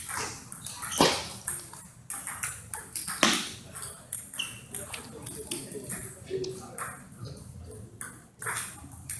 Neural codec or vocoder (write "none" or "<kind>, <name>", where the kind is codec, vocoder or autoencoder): none